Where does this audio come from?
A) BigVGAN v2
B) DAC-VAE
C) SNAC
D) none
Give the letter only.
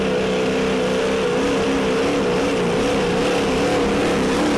D